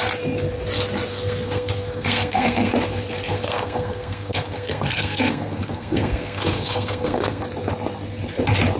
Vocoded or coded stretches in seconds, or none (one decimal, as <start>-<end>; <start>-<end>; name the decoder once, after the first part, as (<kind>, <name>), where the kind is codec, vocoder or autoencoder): 1.1-2.7 (codec, SNAC); 3.3-7.4